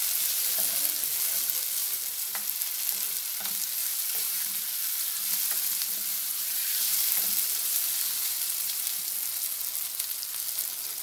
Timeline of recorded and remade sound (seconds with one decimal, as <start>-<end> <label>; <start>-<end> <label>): 0.0-1.8 recorded; 1.8-2.4 remade; 2.4-3.8 recorded; 3.8-4.5 remade; 4.5-6.1 recorded; 6.1-7.0 remade; 7.0-8.2 recorded; 8.2-9.0 remade; 9.0-11.0 recorded